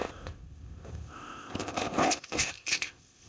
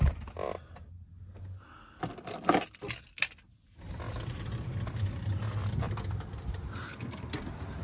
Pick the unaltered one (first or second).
second